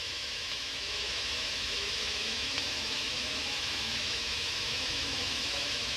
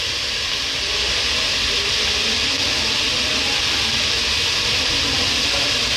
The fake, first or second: first